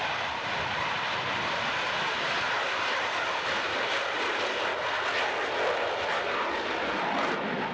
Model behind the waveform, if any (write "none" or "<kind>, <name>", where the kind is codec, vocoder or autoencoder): vocoder, BigVGAN v2